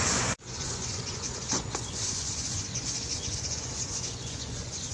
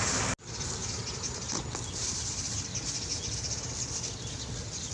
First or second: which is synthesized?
first